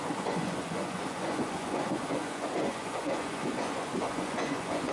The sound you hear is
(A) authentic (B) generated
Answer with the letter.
B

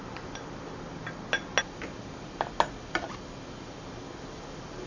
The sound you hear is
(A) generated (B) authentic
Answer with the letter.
B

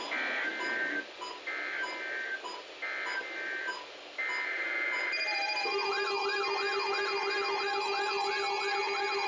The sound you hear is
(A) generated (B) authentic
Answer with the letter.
B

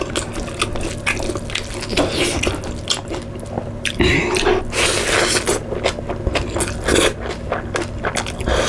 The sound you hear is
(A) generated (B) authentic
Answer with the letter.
B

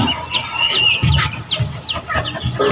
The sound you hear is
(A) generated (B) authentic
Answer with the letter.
B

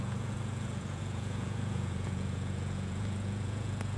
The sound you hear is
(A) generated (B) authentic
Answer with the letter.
A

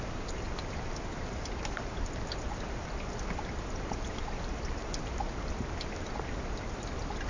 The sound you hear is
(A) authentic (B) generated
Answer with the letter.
A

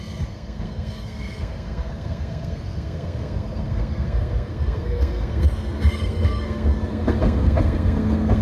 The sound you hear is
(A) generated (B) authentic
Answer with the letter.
A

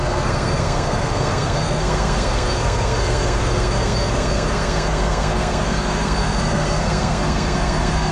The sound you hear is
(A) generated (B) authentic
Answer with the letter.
A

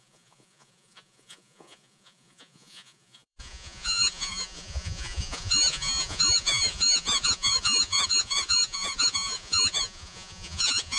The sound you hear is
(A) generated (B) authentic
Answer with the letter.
A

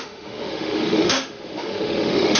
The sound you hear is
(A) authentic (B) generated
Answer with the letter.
B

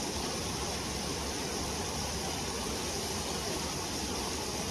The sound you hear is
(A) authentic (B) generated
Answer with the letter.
A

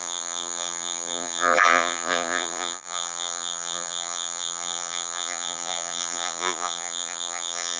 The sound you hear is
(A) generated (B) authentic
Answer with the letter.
A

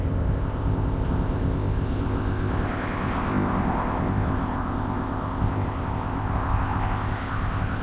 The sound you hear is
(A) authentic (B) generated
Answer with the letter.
B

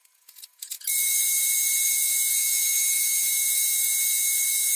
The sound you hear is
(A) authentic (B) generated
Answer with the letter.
B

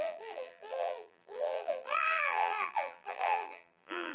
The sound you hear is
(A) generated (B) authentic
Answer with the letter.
A